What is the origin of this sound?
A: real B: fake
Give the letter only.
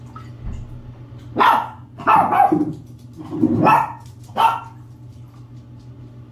A